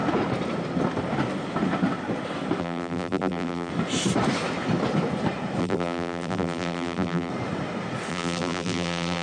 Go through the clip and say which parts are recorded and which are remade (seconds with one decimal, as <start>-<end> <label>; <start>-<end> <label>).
0.0-2.6 recorded; 2.6-3.7 remade; 3.7-5.6 recorded; 5.6-7.3 remade; 7.3-8.1 recorded; 8.1-9.2 remade